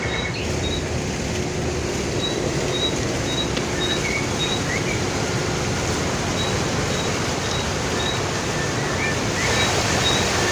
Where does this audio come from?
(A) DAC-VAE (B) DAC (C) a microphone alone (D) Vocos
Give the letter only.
C